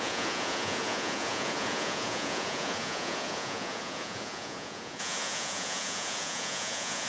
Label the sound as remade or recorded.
remade